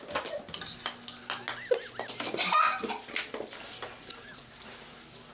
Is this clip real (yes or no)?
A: yes